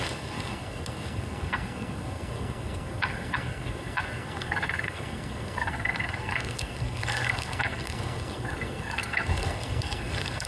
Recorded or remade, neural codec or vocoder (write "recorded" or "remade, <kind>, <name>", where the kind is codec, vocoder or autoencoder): remade, codec, SNAC